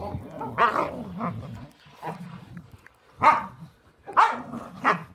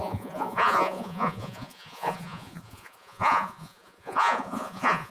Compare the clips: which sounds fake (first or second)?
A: second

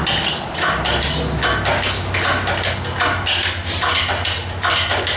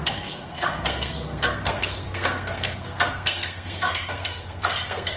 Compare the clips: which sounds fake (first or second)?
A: second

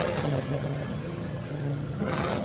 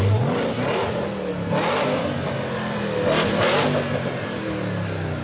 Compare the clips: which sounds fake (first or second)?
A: first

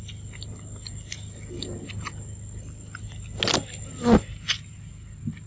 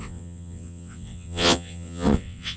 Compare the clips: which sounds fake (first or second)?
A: second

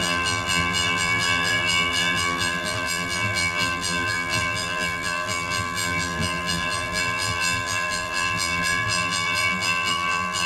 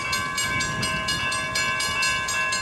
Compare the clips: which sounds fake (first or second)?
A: first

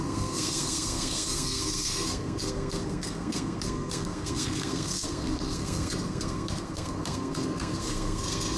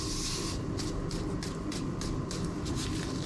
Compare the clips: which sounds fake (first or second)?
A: first